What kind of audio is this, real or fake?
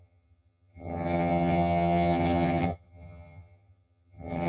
fake